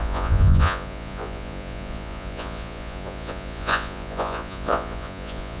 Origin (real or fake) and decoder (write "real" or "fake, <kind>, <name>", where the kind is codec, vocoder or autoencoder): fake, vocoder, Vocos